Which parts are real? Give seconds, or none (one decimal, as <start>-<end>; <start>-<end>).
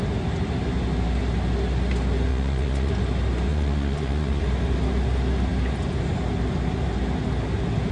0.0-2.3; 2.9-3.5; 4.4-7.9